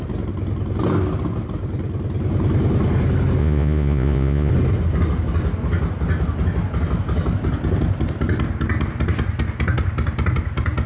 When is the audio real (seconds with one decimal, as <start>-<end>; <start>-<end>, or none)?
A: 0.0-3.4; 4.5-10.9